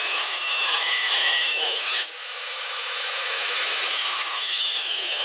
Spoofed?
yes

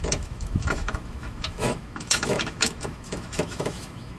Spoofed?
yes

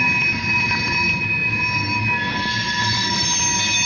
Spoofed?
no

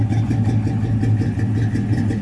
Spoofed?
no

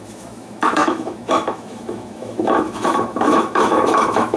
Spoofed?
yes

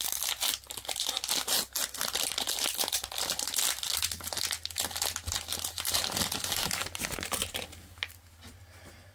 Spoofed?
no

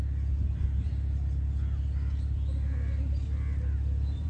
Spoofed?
no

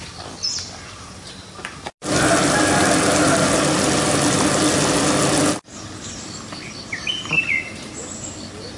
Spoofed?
no